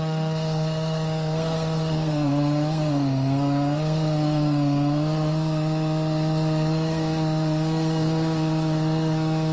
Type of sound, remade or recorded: remade